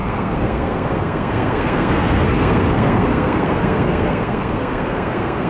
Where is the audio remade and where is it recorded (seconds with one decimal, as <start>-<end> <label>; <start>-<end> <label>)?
0.0-5.5 remade